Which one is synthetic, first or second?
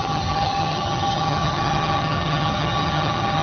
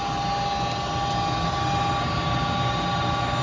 first